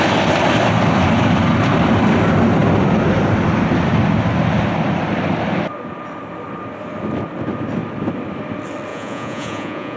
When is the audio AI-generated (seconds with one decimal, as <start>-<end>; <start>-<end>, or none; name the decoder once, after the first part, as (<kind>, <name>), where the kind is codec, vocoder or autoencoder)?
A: 8.9-10.0 (vocoder, Vocos)

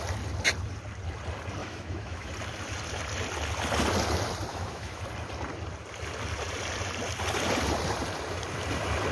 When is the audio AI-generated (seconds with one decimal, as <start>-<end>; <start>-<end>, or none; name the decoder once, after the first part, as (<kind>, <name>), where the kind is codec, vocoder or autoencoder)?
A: 1.6-2.3 (autoencoder, DAC-VAE); 4.5-5.0

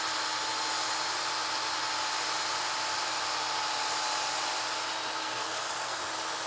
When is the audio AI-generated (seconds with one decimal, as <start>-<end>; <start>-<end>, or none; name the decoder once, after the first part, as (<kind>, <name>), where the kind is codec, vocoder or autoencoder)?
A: 5.2-6.0 (codec, SNAC)

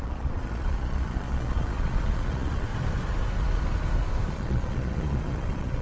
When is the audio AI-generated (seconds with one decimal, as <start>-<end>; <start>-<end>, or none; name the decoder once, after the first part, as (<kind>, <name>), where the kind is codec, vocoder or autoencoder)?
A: 0.0-2.7 (vocoder, Vocos); 4.3-5.8

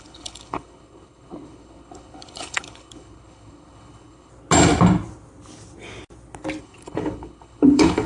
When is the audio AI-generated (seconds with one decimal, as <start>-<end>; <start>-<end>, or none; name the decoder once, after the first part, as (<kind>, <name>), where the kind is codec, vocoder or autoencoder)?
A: 0.0-4.3 (codec, HILCodec); 6.6-8.1

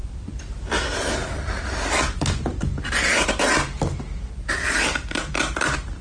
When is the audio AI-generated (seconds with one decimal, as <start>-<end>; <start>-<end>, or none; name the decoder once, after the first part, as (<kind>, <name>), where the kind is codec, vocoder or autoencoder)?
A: none

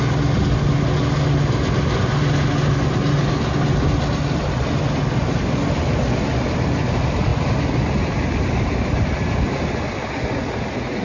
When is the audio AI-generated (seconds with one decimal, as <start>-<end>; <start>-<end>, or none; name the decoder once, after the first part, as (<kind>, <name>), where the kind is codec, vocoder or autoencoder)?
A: none